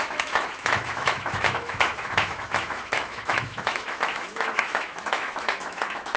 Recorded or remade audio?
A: remade